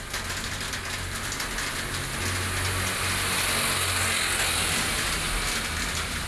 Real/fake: real